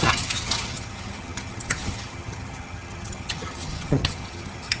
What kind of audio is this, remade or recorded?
remade